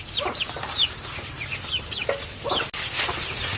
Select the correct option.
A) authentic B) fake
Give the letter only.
A